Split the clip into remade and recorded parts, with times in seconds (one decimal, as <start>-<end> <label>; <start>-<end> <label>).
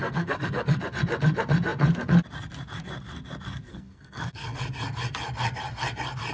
0.0-0.8 remade; 0.8-3.7 recorded; 3.7-4.6 remade; 4.6-6.3 recorded